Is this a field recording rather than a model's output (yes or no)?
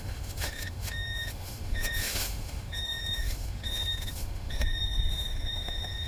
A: no